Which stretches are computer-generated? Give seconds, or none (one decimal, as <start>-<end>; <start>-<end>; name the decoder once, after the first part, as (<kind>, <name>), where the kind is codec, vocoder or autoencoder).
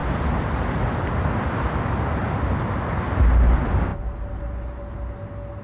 none